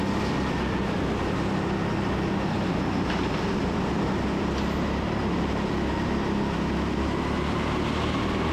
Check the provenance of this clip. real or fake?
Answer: real